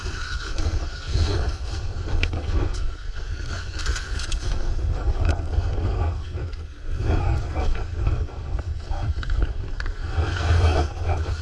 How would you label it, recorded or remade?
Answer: remade